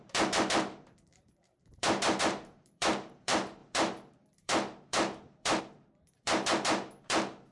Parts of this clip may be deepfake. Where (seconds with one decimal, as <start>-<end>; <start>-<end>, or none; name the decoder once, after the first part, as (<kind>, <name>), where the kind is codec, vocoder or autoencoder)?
0.0-7.5 (vocoder, BigVGAN v2)